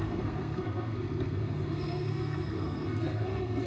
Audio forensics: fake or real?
fake